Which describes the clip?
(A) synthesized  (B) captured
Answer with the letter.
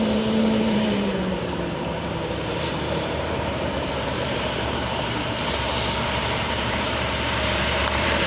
A